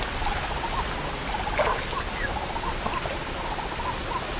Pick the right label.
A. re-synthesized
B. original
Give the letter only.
B